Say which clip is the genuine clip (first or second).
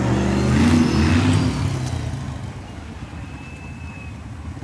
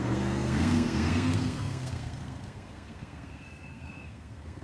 first